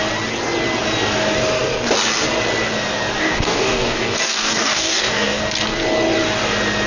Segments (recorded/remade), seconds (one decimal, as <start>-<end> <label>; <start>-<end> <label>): 0.0-3.2 recorded; 3.2-5.4 remade; 5.4-6.9 recorded